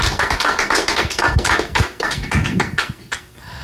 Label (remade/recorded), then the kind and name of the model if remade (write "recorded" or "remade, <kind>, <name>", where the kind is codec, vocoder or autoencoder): remade, codec, SNAC